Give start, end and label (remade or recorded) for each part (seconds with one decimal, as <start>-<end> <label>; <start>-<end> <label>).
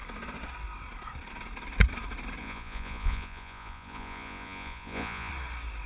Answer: 0.0-2.4 recorded; 2.4-5.3 remade; 5.3-5.9 recorded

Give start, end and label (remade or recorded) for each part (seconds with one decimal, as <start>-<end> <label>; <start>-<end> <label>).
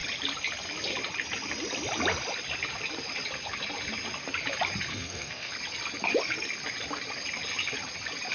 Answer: 0.0-4.9 recorded; 4.9-5.5 remade; 5.5-8.3 recorded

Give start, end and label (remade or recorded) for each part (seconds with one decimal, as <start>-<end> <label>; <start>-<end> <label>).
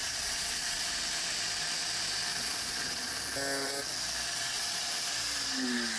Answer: 0.0-0.9 remade; 0.9-2.3 recorded; 2.3-3.1 remade; 3.1-4.4 recorded; 4.4-4.9 remade; 4.9-6.0 recorded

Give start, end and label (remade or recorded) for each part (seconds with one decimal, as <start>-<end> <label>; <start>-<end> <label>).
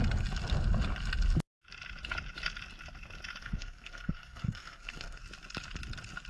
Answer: 0.0-3.4 recorded; 3.4-5.2 remade; 5.2-6.3 recorded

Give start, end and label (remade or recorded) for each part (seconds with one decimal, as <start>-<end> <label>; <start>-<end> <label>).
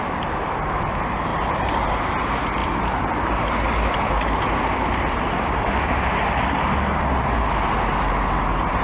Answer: 0.0-8.8 recorded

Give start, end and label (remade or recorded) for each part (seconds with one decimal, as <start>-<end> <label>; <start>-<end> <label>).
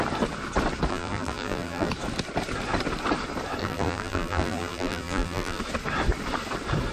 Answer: 0.0-0.9 recorded; 0.9-1.9 remade; 1.9-3.6 recorded; 3.6-5.6 remade; 5.6-6.9 recorded